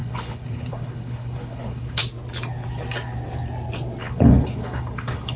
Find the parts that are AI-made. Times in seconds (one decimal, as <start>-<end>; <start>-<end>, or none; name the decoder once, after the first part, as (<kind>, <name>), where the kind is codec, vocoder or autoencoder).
0.0-2.0 (codec, HILCodec); 4.0-5.4